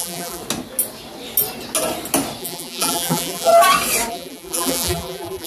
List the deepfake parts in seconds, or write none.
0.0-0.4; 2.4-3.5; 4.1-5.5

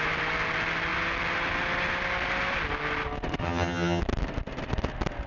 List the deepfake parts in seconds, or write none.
3.4-4.0

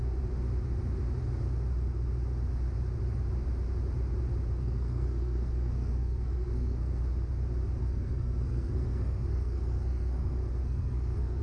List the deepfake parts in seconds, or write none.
4.6-7.0; 7.8-11.4

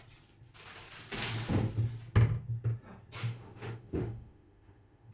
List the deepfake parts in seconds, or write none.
3.2-5.1

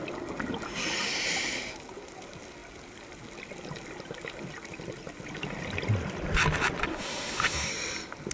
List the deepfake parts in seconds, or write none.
6.9-7.7

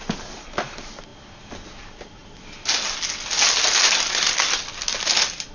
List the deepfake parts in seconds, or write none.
none

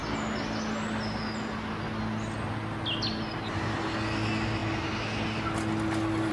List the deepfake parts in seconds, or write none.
none